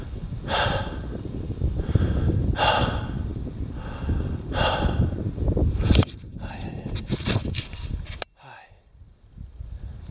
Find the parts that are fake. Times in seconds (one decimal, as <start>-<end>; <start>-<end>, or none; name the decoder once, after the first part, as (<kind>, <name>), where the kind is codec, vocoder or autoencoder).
none